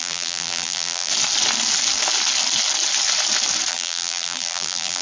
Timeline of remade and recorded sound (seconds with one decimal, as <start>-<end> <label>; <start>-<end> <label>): 0.0-1.1 remade; 1.1-3.7 recorded; 3.7-5.0 remade